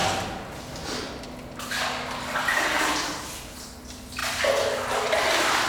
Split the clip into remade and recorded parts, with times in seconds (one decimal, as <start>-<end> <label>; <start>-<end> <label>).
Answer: 0.0-5.7 recorded